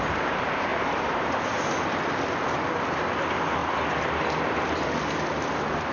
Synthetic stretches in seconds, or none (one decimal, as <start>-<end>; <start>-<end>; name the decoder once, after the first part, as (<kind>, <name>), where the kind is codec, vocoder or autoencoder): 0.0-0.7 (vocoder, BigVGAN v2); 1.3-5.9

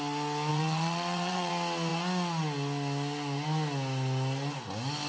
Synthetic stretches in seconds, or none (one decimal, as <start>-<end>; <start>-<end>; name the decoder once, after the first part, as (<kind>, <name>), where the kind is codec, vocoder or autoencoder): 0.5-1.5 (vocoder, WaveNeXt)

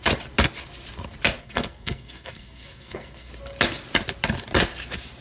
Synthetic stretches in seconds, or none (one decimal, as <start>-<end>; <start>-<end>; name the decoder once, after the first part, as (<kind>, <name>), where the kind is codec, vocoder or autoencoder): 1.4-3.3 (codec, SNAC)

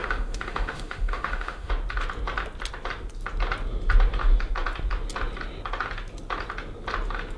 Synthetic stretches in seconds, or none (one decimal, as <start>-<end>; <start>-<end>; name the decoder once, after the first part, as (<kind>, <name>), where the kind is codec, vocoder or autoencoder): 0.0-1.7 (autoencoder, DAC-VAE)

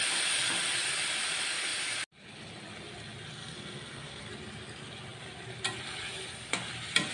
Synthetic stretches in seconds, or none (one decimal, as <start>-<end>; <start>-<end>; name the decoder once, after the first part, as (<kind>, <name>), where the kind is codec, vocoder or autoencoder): 3.4-4.3 (codec, SNAC)